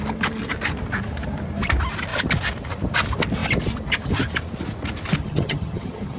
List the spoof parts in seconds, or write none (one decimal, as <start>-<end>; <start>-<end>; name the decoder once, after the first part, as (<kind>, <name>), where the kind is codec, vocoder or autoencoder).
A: 5.2-6.2 (vocoder, HiFi-GAN)